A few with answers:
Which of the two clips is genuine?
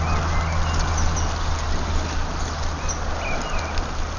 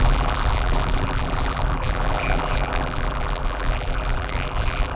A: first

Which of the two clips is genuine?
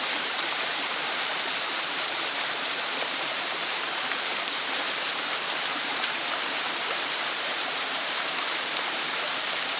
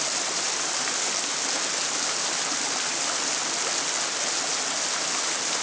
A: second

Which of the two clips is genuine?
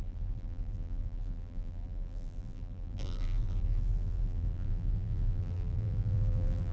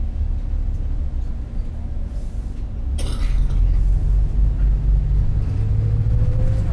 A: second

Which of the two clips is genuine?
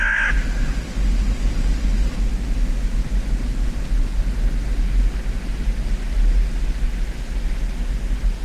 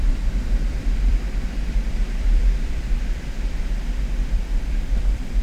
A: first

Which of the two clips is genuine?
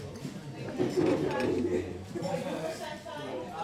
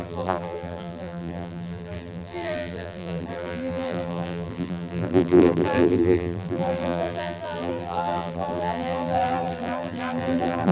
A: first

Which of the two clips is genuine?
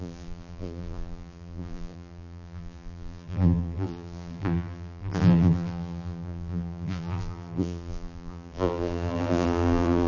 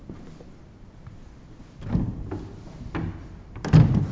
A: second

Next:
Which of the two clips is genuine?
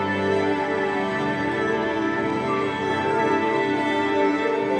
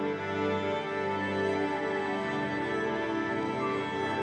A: second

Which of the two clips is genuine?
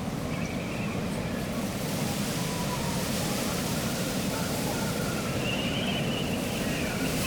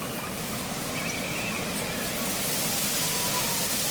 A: second